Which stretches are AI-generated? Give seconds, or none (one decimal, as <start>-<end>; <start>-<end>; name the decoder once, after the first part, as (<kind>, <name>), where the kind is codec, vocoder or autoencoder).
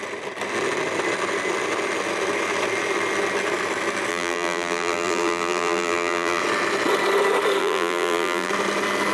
4.1-6.4 (vocoder, BigVGAN v2); 7.6-8.5